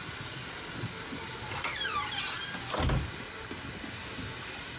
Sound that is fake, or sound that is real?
real